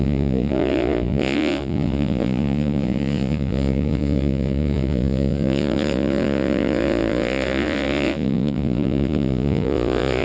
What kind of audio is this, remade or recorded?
remade